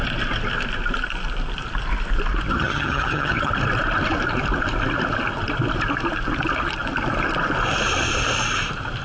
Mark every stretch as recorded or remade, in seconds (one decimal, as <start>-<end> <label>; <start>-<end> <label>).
0.0-2.5 recorded; 2.5-3.5 remade; 3.5-9.0 recorded